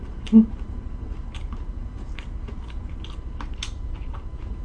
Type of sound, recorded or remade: remade